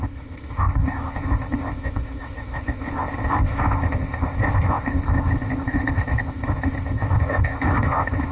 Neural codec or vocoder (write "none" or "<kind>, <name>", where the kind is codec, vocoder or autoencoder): codec, ZipCodec